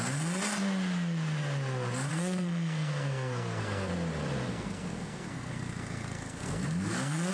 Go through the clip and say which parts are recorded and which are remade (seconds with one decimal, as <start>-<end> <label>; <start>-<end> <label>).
0.0-2.1 recorded; 2.1-3.9 remade; 3.9-4.5 recorded; 4.5-7.3 remade